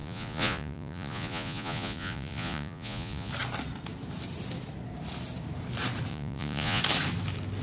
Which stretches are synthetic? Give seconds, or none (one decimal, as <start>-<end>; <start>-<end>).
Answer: 0.0-3.3; 6.1-6.8